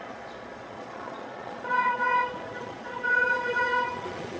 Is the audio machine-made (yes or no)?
yes